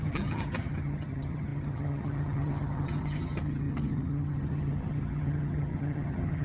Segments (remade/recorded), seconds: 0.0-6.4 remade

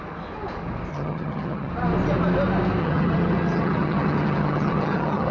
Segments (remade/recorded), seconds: 0.0-0.9 recorded; 0.9-1.7 remade; 1.7-2.8 recorded; 2.8-5.3 remade

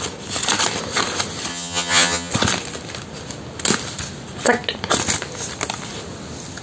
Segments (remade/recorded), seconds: 0.0-1.5 recorded; 1.5-2.3 remade; 2.3-6.6 recorded